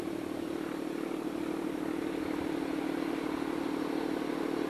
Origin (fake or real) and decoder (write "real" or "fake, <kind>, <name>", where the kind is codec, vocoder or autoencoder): real